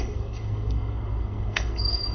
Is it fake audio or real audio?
fake